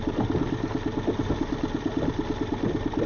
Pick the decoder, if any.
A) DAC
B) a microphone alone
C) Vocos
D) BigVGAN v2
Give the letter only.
B